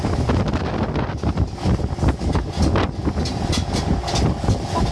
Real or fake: real